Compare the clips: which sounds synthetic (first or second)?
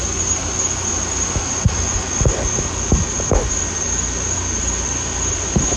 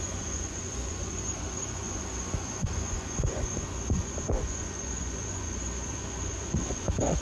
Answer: second